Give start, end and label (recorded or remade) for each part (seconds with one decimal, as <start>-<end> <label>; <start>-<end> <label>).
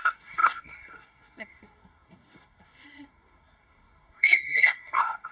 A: 0.0-5.3 remade